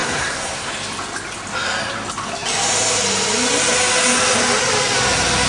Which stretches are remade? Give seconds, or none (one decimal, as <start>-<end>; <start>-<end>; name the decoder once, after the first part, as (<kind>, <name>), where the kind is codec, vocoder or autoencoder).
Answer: 0.0-0.7 (codec, SNAC)